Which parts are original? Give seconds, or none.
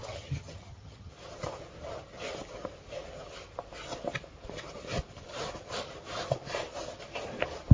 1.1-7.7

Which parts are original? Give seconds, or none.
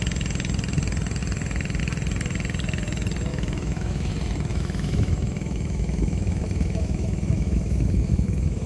0.0-3.3; 4.1-4.5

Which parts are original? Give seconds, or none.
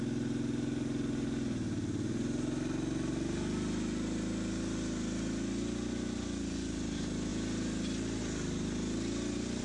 0.0-9.6